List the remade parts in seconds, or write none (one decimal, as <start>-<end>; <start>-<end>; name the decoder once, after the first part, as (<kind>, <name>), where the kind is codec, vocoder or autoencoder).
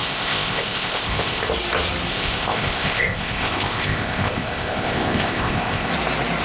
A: 0.0-1.5 (codec, ZipCodec); 2.1-5.9